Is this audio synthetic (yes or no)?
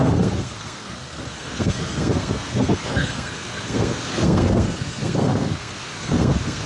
yes